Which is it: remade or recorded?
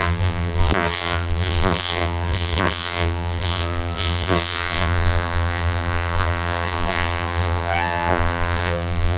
remade